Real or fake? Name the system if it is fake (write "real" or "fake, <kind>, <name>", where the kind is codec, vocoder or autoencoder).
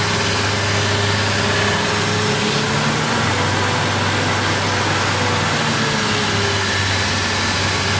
real